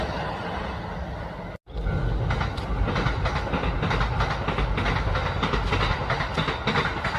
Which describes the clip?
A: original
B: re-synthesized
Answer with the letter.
A